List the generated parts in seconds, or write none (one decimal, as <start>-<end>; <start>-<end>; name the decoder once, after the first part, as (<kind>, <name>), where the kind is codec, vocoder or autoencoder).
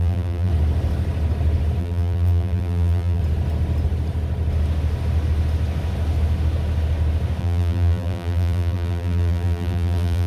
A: 0.0-0.5 (vocoder, BigVGAN v2); 1.8-3.2; 7.4-10.3